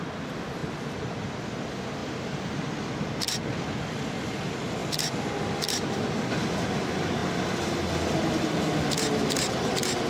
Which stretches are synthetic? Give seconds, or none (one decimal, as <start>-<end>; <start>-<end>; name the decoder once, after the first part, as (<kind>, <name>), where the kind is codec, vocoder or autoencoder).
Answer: 2.0-2.5 (vocoder, BigVGAN v2)